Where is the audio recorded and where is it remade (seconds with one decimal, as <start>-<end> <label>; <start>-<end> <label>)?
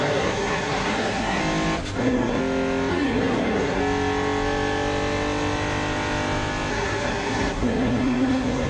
0.0-1.4 remade; 1.4-2.0 recorded; 2.0-2.4 remade; 2.4-2.9 recorded; 2.9-3.8 remade; 3.8-6.7 recorded; 6.7-8.7 remade